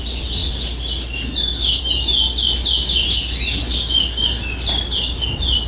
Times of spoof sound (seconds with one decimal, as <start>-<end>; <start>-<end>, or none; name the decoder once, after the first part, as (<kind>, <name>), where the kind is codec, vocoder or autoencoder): none